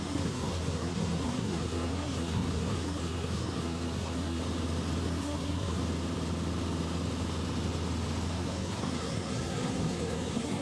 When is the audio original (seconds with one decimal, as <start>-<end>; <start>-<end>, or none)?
4.4-5.0; 5.8-8.3